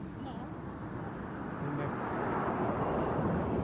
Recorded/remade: recorded